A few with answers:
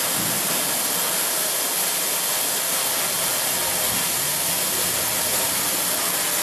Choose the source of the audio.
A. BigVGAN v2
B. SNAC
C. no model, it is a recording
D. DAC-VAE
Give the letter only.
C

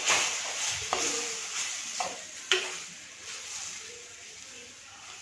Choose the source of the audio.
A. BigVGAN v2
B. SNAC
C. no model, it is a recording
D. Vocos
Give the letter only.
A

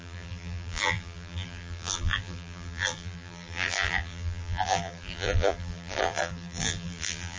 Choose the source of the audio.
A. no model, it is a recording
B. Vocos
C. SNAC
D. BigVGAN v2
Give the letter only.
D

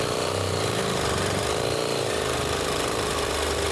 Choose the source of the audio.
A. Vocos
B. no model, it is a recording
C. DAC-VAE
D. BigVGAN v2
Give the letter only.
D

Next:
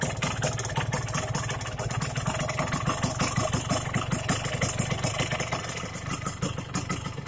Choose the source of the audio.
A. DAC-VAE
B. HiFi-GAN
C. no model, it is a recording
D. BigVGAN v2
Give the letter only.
C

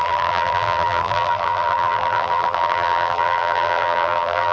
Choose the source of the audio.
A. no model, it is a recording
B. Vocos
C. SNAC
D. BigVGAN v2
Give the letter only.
D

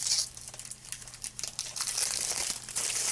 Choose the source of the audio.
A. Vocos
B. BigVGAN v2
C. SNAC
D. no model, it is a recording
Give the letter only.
B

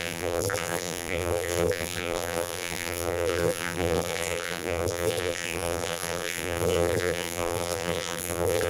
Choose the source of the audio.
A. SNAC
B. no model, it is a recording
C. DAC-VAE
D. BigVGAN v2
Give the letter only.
D